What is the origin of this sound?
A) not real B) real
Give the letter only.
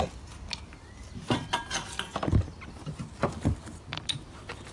B